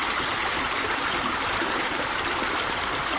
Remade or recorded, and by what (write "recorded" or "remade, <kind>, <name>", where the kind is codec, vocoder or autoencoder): remade, vocoder, BigVGAN v2